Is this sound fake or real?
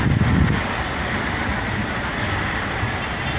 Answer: real